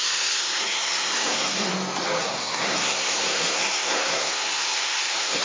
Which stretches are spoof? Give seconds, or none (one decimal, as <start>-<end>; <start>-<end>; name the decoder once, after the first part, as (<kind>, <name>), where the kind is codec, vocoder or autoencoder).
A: 0.0-1.7 (codec, SNAC); 2.2-5.4